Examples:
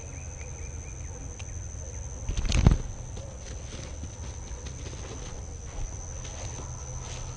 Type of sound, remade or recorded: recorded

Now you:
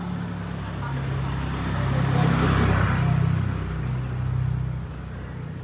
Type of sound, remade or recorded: recorded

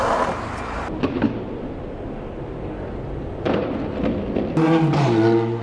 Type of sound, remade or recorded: recorded